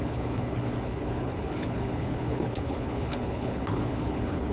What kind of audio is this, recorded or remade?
remade